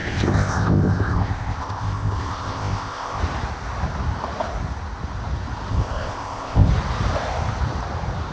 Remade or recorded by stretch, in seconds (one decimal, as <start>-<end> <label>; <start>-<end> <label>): 0.0-3.2 remade; 3.2-5.7 recorded; 5.7-6.7 remade; 6.7-8.3 recorded